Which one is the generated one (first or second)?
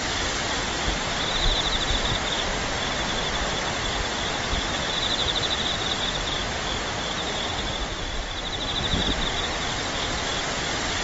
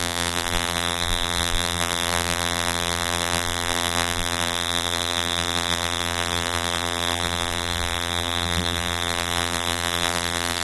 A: second